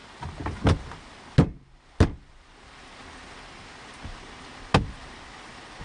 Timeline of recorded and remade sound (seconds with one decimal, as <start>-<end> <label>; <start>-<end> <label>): 0.0-5.8 recorded